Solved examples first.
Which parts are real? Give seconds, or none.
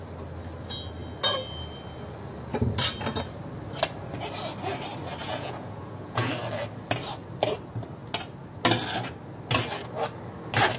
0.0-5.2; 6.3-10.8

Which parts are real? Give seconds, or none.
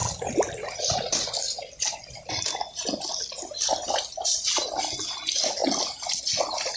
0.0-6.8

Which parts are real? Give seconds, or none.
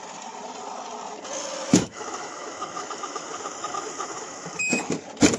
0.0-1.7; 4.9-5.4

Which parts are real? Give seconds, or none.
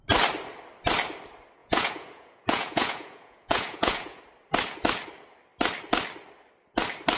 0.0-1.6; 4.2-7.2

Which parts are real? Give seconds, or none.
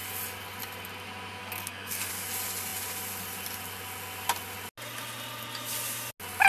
0.0-1.4; 2.1-6.5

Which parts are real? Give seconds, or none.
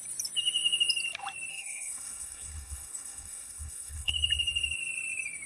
0.0-1.5; 4.1-5.5